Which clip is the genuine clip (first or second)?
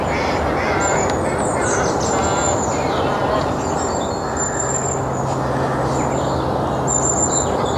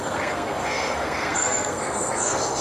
first